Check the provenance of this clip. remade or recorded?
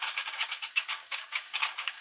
remade